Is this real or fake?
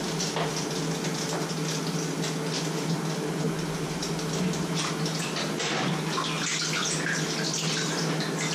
real